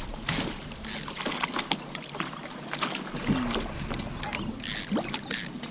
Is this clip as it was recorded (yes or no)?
yes